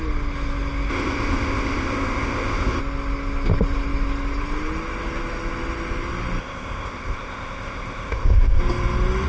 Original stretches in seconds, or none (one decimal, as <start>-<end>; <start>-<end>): 0.0-0.9; 2.8-6.4; 8.6-9.3